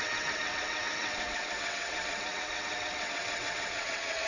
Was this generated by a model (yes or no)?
yes